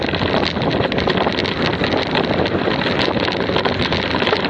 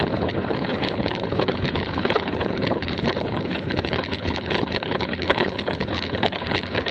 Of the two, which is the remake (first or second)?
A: second